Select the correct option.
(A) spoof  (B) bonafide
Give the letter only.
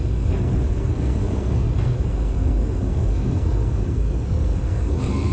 A